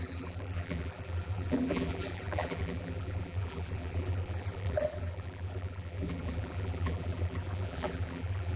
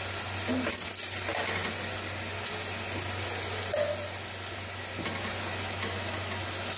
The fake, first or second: first